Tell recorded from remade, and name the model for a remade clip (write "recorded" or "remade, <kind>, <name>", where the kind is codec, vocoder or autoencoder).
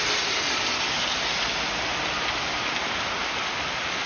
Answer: recorded